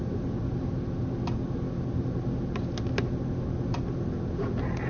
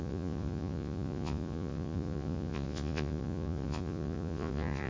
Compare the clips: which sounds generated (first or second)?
second